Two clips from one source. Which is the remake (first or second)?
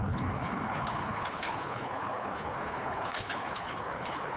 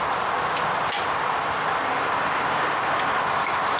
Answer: first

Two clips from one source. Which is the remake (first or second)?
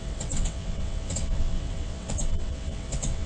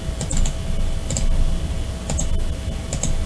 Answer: first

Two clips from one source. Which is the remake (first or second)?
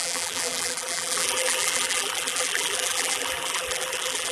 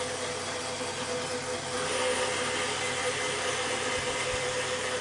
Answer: first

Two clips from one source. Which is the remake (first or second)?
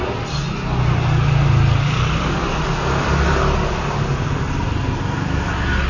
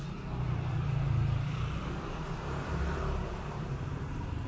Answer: second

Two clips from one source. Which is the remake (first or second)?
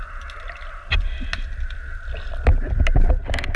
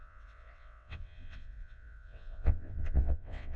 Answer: second